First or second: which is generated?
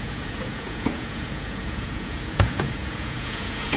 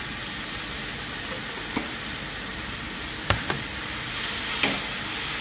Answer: first